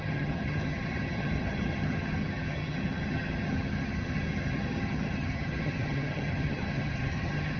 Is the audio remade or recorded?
remade